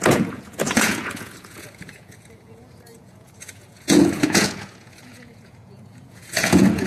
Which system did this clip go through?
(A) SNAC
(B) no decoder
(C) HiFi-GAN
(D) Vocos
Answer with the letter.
D